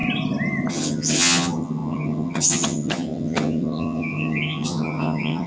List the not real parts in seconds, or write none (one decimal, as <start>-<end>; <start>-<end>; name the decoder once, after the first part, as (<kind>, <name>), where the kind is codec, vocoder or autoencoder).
0.7-5.5 (vocoder, HiFi-GAN)